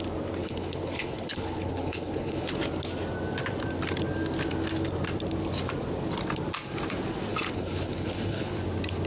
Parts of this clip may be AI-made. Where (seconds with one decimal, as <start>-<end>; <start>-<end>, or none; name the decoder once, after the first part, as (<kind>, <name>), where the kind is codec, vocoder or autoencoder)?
0.4-2.5 (codec, HILCodec); 7.3-8.5